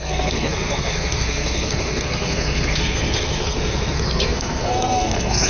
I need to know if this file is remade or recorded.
remade